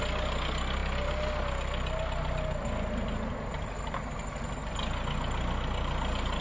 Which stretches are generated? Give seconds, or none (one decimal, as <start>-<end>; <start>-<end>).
none